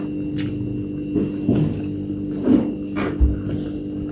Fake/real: real